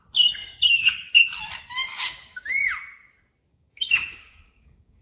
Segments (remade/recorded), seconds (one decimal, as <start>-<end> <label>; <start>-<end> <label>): 0.0-0.4 recorded; 0.4-1.1 remade; 1.1-1.9 recorded; 1.9-2.4 remade; 2.4-3.5 recorded; 3.5-5.0 remade